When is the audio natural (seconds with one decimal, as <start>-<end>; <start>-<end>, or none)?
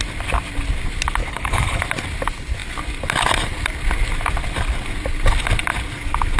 0.0-1.2; 1.8-6.4